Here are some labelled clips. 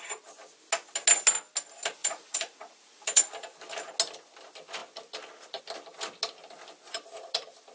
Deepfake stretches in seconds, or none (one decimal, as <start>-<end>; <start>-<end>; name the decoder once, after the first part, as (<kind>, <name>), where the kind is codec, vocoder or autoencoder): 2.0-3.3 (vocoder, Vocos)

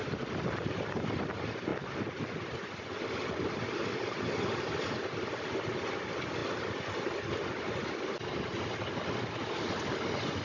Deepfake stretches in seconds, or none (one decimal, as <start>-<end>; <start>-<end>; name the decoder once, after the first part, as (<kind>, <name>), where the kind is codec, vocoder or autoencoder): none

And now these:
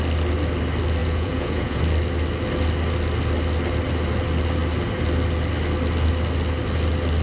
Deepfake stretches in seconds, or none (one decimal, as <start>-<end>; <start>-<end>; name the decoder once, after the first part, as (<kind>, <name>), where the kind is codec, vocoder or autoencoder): 1.0-1.8 (vocoder, Vocos)

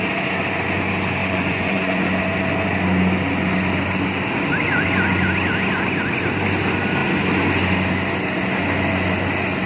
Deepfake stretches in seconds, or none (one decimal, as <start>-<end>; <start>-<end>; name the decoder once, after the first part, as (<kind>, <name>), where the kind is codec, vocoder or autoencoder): 1.2-2.0 (vocoder, Vocos)

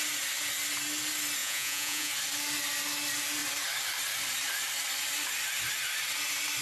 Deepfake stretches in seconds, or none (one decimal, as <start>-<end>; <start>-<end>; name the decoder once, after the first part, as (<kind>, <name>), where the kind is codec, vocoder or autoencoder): 1.4-2.1 (vocoder, Vocos)